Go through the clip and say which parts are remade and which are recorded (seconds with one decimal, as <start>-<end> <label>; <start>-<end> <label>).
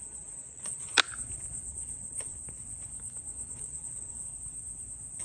0.0-0.9 remade; 0.9-1.7 recorded; 1.7-2.4 remade; 2.4-3.5 recorded; 3.5-4.3 remade; 4.3-5.2 recorded